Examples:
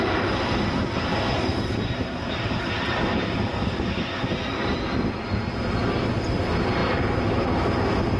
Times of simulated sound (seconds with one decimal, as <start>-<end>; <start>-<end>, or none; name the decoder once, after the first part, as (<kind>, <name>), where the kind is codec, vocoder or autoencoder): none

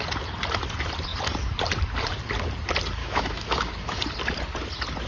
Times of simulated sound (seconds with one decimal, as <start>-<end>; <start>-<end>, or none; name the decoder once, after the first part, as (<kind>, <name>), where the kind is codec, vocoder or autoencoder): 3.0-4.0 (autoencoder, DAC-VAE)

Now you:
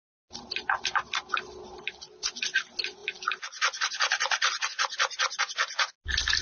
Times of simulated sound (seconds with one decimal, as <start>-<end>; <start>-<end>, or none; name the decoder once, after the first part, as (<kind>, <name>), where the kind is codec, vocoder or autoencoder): none

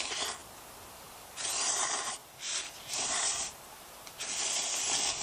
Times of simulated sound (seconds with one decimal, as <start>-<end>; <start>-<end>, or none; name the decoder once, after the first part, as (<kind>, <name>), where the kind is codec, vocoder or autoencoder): 0.4-1.7 (vocoder, BigVGAN v2); 2.2-4.2

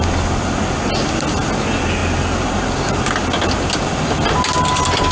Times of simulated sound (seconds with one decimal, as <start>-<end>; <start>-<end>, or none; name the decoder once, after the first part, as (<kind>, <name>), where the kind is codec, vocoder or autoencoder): none

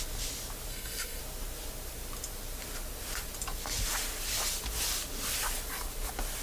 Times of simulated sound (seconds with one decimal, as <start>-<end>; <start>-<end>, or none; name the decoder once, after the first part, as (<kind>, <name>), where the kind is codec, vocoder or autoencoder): 0.7-1.2 (codec, SNAC)

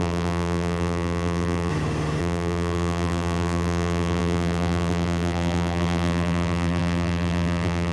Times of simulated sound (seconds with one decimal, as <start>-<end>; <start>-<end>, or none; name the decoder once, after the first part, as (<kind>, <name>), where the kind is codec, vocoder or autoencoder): 0.0-1.7 (vocoder, BigVGAN v2); 2.2-7.9